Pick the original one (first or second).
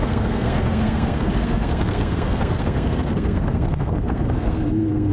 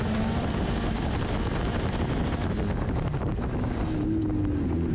second